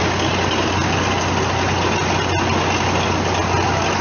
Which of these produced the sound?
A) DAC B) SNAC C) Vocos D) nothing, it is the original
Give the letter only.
D